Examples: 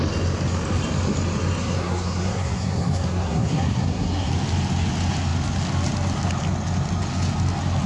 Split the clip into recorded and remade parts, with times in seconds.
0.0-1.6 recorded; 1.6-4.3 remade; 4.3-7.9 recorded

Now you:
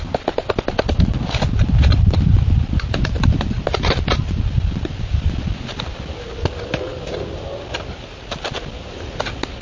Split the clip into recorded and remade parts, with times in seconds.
0.0-9.6 recorded

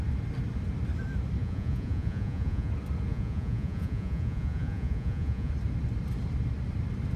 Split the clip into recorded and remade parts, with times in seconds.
0.0-1.4 recorded; 1.4-2.7 remade; 2.7-3.1 recorded; 3.1-5.5 remade; 5.5-7.2 recorded

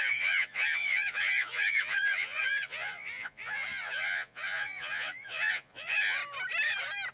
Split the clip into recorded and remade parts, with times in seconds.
0.0-6.2 remade; 6.2-7.1 recorded